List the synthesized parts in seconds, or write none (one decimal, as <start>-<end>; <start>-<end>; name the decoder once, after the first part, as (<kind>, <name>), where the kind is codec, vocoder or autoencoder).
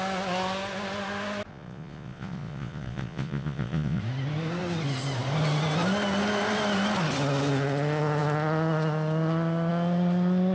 1.5-4.0 (vocoder, Vocos)